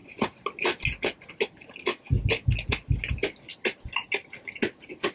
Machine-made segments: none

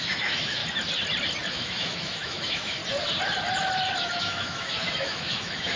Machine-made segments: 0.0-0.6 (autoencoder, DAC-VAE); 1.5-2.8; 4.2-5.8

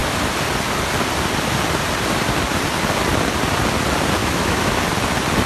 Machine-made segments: 4.2-4.8 (autoencoder, DAC-VAE)